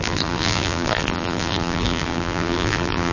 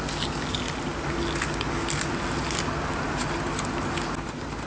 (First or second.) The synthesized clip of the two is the first